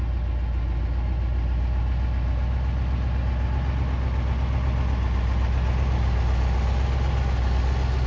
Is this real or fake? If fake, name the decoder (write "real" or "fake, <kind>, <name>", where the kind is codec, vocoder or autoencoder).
real